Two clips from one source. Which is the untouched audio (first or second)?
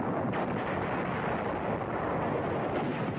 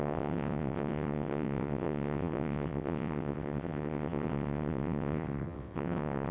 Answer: first